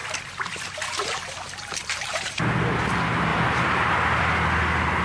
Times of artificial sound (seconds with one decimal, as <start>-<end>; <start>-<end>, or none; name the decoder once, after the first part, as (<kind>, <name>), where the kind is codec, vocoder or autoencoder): 0.0-0.5 (vocoder, BigVGAN v2); 1.8-2.4; 3.3-4.2